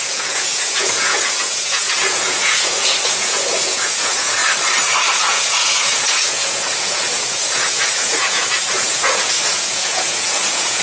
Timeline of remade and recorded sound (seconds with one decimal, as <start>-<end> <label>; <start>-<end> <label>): 0.0-4.4 remade; 4.4-5.2 recorded; 5.2-10.8 remade